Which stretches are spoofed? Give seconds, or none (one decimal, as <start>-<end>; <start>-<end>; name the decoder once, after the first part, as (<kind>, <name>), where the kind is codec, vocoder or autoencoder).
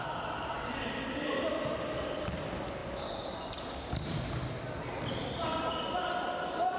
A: none